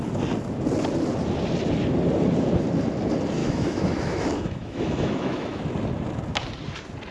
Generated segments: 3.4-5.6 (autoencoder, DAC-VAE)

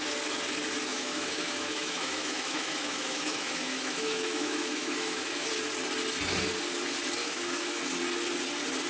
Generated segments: 0.9-5.5 (autoencoder, DAC-VAE); 7.2-7.8

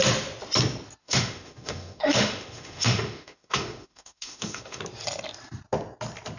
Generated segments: 1.0-4.8 (autoencoder, DAC-VAE)

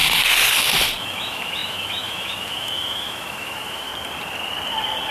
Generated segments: 1.0-3.9 (autoencoder, DAC-VAE)

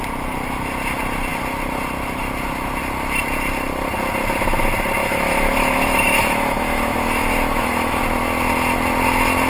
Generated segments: 5.0-8.0 (autoencoder, DAC-VAE)

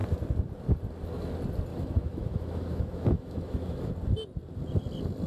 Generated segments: 1.7-3.9 (autoencoder, DAC-VAE)

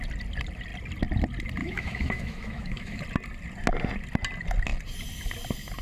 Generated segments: 1.6-3.0 (autoencoder, DAC-VAE)

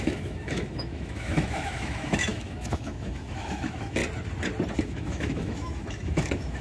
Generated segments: 0.0-4.0 (autoencoder, DAC-VAE); 4.8-6.6